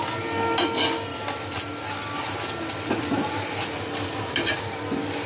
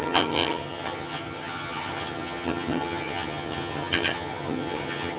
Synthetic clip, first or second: second